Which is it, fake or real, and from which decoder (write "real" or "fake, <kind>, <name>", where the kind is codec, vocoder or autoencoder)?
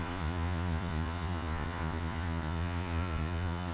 fake, vocoder, Vocos